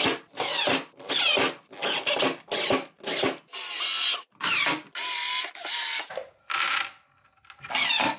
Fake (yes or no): no